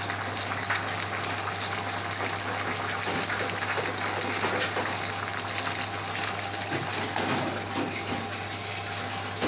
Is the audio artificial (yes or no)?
no